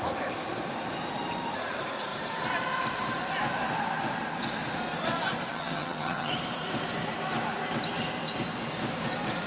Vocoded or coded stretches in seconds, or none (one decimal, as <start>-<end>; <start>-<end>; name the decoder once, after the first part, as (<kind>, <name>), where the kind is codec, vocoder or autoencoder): 5.5-6.3 (vocoder, HiFi-GAN)